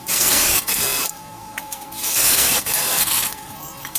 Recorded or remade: remade